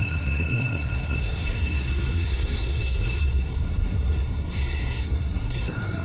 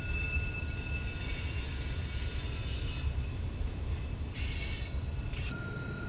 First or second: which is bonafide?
second